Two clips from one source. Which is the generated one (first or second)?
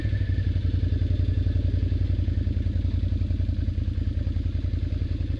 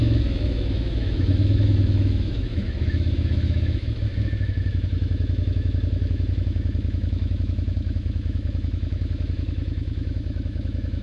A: second